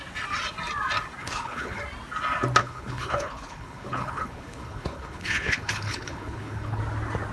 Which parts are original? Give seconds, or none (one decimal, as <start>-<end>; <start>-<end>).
0.0-1.2; 1.8-2.6; 6.8-7.3